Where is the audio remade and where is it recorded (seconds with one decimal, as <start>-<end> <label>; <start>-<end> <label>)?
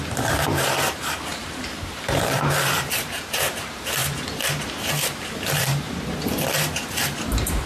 0.0-7.7 remade